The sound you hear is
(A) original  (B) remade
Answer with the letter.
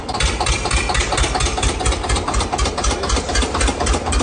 A